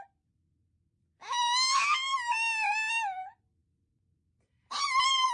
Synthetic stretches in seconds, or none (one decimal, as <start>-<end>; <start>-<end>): 3.6-5.3